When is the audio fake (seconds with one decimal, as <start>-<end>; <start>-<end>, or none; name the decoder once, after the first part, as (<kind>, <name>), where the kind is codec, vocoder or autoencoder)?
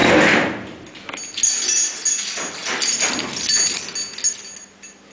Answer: none